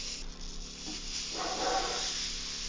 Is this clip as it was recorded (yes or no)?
yes